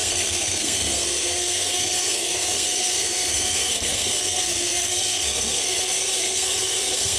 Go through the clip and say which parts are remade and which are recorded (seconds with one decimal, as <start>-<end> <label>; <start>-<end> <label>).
0.0-7.2 remade